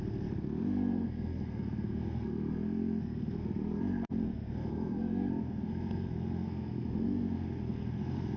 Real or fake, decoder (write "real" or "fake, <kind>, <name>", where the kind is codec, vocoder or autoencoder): fake, codec, SNAC